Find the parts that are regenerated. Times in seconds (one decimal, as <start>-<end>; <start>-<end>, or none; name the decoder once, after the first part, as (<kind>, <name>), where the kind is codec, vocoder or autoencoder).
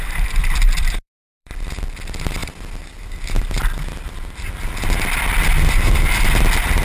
0.0-6.8 (vocoder, BigVGAN v2)